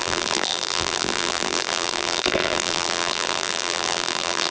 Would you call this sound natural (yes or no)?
no